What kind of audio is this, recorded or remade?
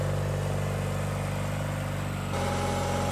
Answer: recorded